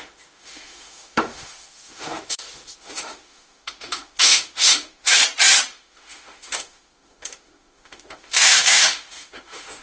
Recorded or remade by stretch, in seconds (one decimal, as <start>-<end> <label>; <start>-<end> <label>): 0.0-5.2 remade; 5.2-5.7 recorded; 5.7-9.8 remade